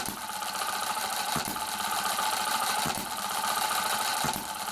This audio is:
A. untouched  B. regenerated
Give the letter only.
B